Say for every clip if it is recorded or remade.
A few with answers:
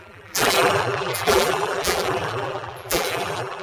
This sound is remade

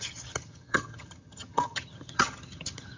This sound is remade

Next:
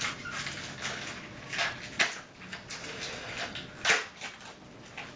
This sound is recorded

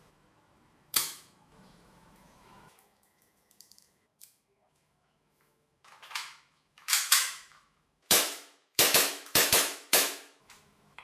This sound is remade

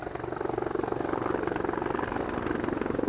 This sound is recorded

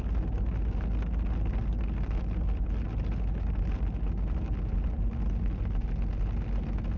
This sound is recorded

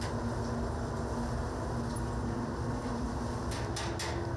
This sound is recorded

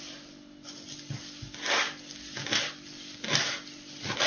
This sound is recorded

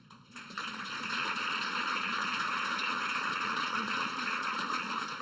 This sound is remade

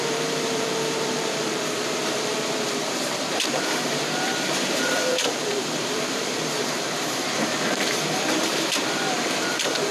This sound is remade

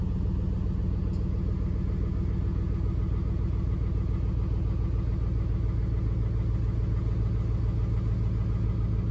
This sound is recorded